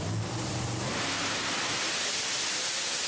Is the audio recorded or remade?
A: remade